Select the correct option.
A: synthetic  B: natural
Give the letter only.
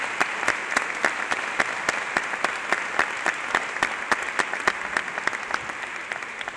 B